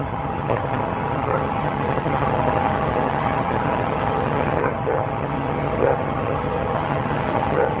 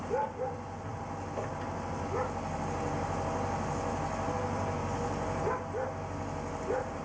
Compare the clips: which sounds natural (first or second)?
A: second